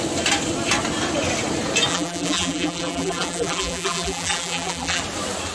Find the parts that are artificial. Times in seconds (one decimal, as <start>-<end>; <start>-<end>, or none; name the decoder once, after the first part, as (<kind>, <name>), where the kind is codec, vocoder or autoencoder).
1.9-5.0 (vocoder, BigVGAN v2)